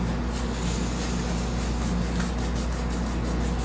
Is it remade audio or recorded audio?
recorded